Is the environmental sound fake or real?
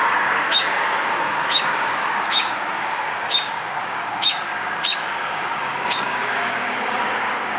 fake